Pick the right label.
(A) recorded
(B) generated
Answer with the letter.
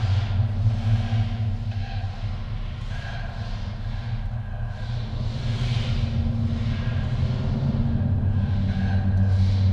A